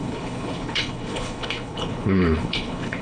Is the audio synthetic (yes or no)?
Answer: yes